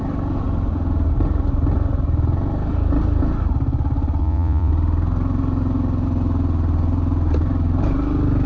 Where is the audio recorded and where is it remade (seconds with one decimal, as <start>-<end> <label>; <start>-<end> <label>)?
0.0-4.2 recorded; 4.2-4.7 remade; 4.7-8.5 recorded